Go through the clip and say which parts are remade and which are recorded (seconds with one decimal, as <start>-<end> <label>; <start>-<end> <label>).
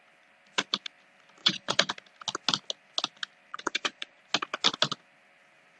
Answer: 0.0-1.4 recorded; 1.4-1.9 remade; 1.9-3.5 recorded; 3.5-4.2 remade; 4.2-5.8 recorded